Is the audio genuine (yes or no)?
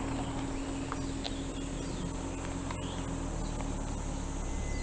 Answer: yes